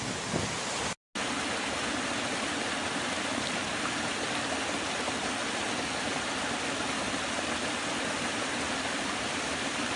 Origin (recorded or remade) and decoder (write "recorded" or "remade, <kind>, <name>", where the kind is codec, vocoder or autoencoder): recorded